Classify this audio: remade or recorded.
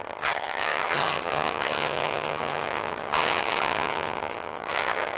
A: remade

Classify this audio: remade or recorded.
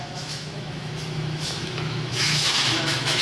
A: remade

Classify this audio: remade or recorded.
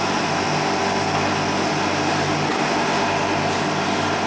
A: recorded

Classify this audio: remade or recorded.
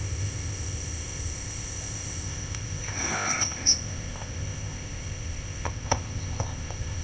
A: remade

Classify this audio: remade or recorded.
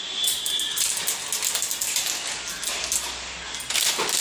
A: recorded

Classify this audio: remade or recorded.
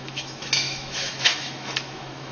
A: remade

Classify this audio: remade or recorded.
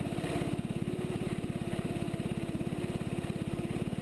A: remade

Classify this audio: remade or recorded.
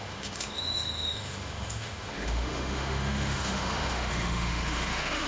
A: remade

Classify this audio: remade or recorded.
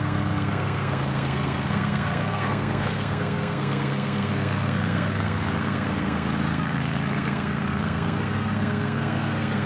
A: remade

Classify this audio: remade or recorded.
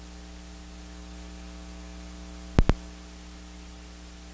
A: recorded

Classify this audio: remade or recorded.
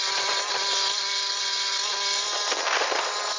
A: recorded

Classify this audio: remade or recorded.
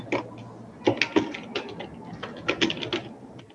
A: recorded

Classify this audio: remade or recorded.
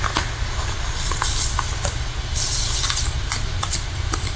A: recorded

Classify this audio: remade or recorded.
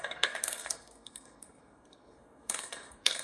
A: remade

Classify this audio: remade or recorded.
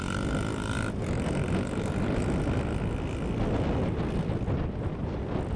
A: recorded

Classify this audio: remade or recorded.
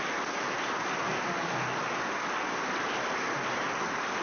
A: recorded